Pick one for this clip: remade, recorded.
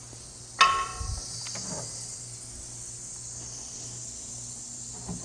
recorded